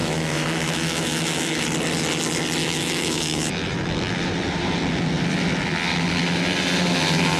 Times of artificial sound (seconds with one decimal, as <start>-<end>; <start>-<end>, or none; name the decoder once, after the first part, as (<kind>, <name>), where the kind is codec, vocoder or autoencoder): 0.0-1.6 (autoencoder, DAC-VAE); 2.6-3.5